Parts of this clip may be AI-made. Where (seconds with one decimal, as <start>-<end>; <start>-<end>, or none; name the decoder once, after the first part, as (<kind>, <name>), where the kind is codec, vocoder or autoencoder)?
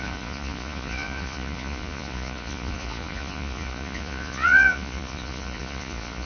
0.0-6.3 (vocoder, Vocos)